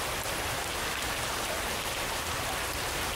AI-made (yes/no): no